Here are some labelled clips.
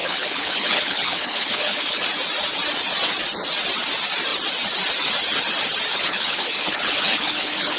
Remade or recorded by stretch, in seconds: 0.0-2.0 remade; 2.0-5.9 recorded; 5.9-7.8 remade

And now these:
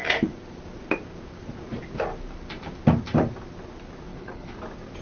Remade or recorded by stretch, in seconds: 0.0-4.1 recorded; 4.1-4.6 remade; 4.6-5.0 recorded

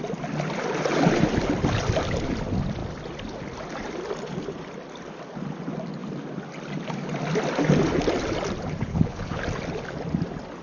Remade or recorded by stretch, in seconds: 0.0-8.8 recorded; 8.8-9.4 remade; 9.4-10.6 recorded

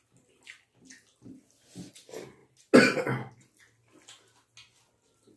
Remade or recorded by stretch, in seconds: 0.0-5.4 recorded

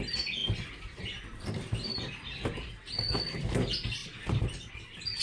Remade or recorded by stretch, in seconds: 0.0-5.2 recorded

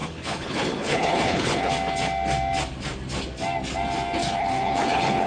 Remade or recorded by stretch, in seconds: 0.0-1.7 remade; 1.7-4.2 recorded; 4.2-5.3 remade